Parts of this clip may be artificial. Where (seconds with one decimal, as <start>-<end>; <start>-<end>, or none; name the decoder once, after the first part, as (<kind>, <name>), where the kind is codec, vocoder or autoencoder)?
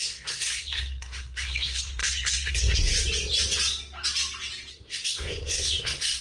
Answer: 0.0-2.9 (codec, SNAC); 4.7-6.2